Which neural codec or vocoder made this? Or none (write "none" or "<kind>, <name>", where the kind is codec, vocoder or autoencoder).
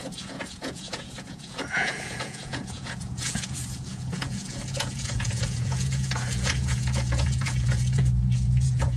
vocoder, Vocos